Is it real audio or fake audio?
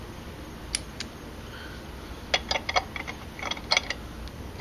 real